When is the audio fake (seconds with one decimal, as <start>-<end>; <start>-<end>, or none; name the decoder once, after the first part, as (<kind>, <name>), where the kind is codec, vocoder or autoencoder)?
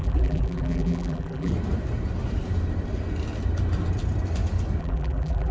0.0-1.5 (vocoder, BigVGAN v2); 4.8-5.5